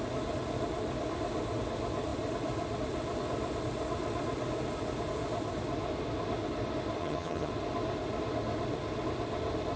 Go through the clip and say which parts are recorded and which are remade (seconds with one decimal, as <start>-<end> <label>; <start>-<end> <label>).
0.0-7.0 recorded; 7.0-7.5 remade; 7.5-9.8 recorded